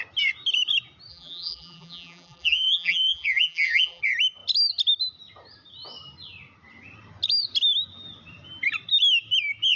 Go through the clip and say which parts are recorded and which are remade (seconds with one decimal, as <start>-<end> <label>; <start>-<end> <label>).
0.0-1.1 recorded; 1.1-4.0 remade; 4.0-9.8 recorded